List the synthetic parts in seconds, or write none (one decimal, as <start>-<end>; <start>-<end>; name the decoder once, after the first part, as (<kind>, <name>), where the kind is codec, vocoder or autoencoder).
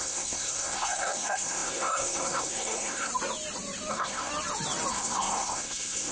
0.0-3.1 (codec, SNAC); 3.9-4.3; 4.9-6.1